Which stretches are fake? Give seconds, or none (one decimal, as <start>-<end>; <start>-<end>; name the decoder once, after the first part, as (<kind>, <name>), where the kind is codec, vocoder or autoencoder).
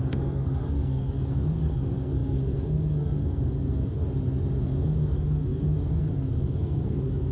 0.0-4.0 (codec, SNAC); 4.6-7.3